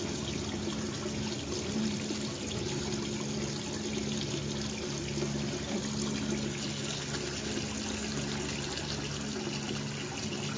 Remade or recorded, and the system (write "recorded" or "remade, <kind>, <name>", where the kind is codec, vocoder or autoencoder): recorded